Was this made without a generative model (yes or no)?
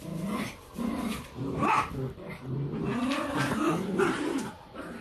no